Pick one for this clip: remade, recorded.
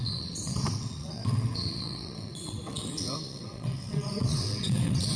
remade